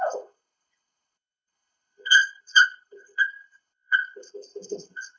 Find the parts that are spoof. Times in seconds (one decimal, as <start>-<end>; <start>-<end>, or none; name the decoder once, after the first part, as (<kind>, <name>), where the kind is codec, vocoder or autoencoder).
0.0-5.2 (codec, HILCodec)